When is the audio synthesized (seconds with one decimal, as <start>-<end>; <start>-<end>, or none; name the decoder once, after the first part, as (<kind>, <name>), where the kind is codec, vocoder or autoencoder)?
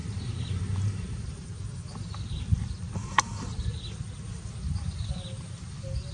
0.0-1.3 (vocoder, BigVGAN v2); 3.0-3.6